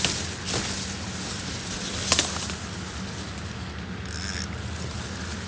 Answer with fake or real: real